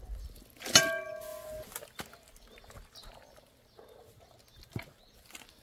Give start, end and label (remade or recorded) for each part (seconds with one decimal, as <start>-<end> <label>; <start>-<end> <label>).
0.0-5.6 recorded